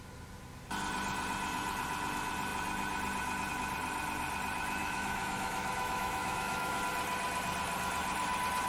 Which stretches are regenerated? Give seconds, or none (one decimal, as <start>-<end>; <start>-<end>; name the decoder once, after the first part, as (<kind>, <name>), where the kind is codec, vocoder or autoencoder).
4.8-6.8 (autoencoder, DAC-VAE)